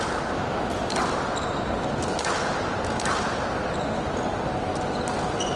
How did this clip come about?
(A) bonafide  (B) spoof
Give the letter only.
A